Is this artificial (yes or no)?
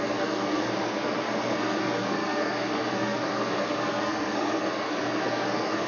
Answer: yes